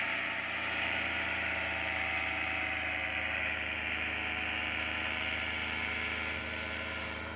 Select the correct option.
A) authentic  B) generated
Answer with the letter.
B